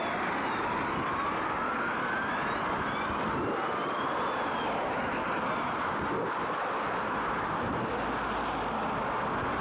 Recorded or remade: recorded